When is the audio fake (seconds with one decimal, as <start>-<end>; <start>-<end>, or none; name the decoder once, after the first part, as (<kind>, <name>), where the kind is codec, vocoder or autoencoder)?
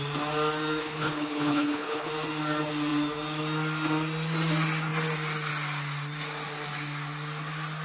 0.8-2.1 (codec, HILCodec)